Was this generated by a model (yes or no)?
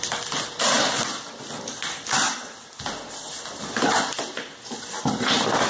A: no